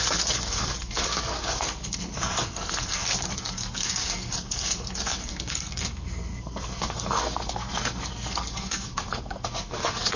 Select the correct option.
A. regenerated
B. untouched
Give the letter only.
A